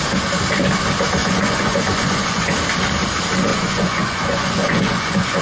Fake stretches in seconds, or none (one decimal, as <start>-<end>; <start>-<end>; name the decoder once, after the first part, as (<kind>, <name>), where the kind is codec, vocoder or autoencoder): 1.2-2.5 (vocoder, Vocos); 3.5-5.4